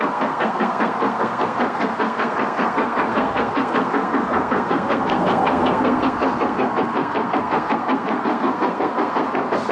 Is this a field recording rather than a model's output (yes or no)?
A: no